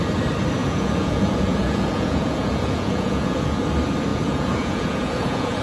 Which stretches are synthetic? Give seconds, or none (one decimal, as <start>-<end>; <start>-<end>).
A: 0.6-3.6; 4.1-5.6